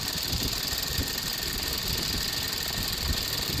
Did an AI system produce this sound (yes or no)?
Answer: no